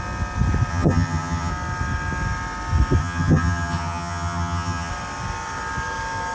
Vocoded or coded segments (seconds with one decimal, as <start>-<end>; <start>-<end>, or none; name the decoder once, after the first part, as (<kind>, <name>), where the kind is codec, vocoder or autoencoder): 0.7-1.5 (vocoder, HiFi-GAN); 3.0-4.9

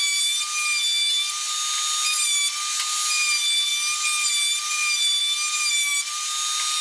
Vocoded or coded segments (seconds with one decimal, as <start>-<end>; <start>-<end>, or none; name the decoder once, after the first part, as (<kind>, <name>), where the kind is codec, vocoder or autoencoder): none

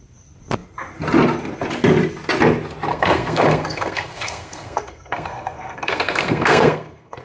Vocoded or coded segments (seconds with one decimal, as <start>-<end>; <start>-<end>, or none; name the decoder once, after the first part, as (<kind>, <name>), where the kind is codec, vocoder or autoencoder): 2.9-7.2 (codec, SNAC)

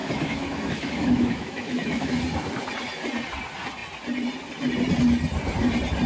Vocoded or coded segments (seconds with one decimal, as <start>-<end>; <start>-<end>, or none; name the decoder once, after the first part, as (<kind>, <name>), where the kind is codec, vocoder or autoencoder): 0.0-2.2 (autoencoder, DAC-VAE)

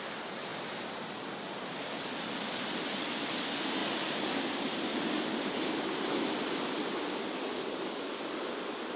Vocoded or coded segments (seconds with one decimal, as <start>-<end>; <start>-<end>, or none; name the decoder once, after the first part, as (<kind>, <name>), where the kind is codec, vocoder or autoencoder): none

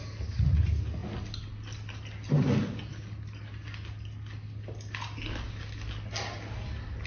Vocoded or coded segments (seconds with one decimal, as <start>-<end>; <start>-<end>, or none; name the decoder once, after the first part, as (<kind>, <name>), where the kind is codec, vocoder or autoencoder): none